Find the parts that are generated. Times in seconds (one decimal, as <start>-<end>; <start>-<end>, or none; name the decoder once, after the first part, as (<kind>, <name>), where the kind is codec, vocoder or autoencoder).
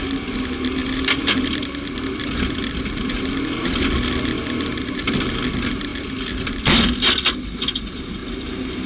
0.8-2.9 (vocoder, BigVGAN v2); 5.9-6.4